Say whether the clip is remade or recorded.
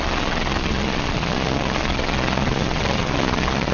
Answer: remade